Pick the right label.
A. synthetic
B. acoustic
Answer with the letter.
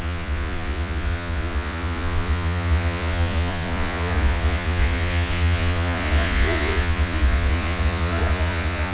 A